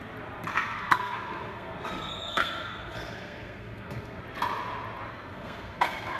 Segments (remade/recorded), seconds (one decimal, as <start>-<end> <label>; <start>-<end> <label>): 0.0-0.5 recorded; 0.5-4.2 remade; 4.2-5.1 recorded; 5.1-6.2 remade